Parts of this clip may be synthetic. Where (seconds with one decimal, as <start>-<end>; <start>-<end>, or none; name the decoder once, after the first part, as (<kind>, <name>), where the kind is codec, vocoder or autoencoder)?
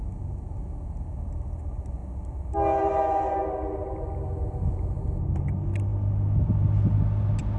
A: none